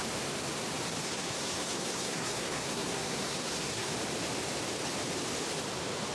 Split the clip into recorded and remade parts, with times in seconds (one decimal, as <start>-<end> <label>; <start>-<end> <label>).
0.0-1.0 recorded; 1.0-3.9 remade; 3.9-6.1 recorded